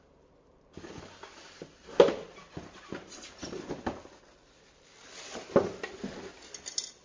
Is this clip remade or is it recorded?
recorded